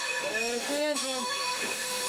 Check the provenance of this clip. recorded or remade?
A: remade